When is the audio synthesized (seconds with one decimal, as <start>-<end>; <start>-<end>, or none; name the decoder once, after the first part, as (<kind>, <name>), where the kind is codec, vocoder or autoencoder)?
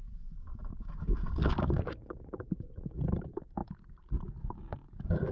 0.0-3.6 (codec, DAC); 4.4-5.3